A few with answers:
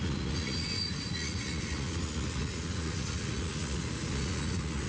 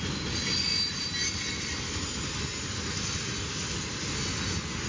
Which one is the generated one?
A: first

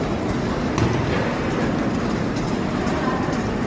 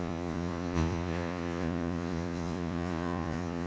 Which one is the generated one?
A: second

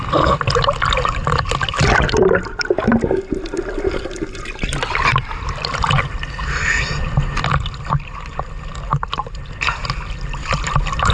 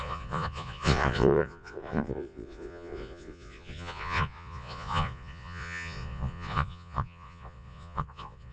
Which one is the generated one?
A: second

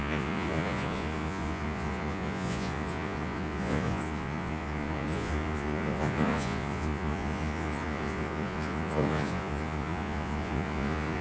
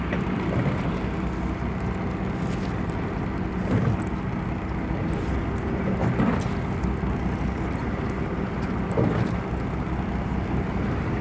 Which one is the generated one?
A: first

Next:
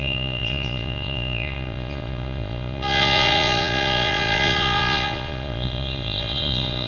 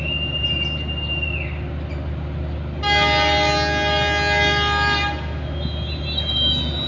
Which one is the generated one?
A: first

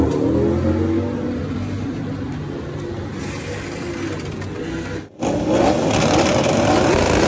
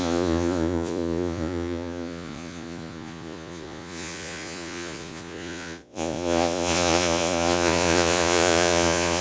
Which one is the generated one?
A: second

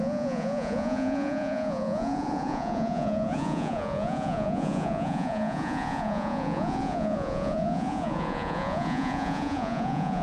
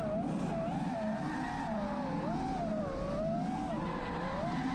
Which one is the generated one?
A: first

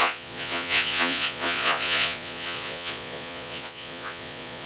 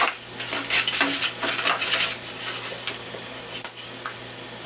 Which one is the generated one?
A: first